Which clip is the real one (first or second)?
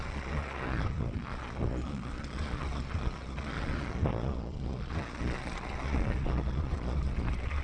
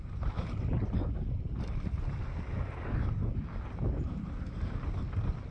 second